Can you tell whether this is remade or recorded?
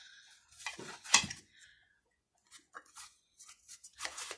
remade